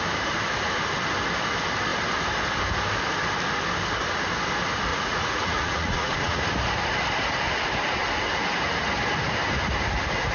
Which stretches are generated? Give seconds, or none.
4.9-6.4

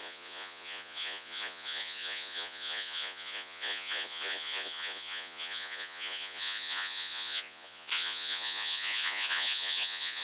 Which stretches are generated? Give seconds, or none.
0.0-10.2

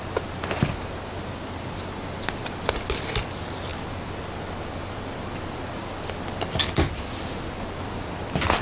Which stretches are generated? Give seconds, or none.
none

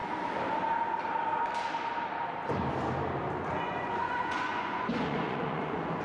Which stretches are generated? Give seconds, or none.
3.6-6.0